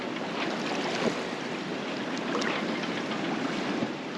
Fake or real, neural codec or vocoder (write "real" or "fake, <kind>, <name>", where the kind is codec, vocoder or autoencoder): real